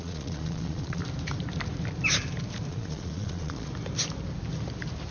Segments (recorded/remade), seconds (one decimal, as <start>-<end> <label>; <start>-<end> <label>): 0.0-1.0 remade; 1.0-2.7 recorded; 2.7-3.7 remade; 3.7-5.1 recorded